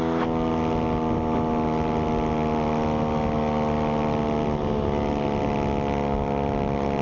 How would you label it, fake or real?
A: real